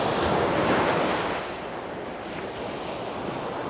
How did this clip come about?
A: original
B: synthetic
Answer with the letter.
A